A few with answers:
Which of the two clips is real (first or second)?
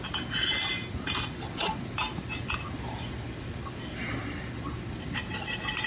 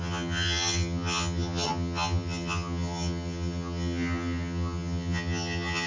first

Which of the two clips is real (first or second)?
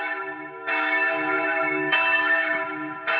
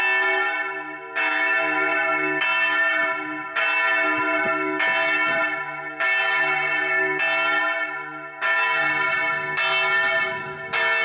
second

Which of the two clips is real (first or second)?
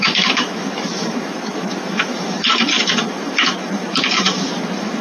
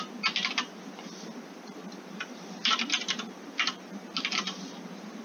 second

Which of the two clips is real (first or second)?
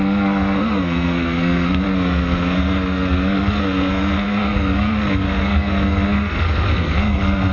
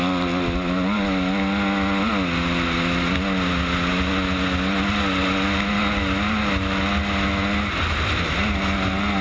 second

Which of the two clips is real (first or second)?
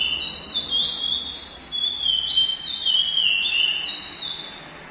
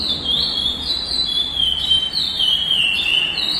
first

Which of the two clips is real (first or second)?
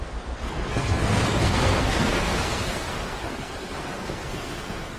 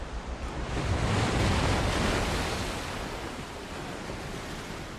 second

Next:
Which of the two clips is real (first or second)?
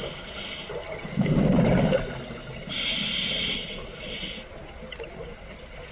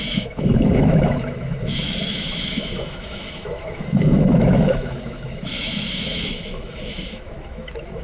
first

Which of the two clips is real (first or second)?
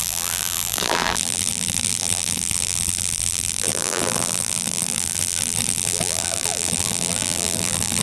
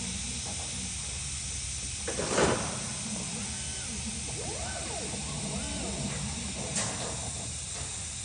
second